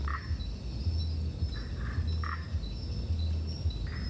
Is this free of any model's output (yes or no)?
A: yes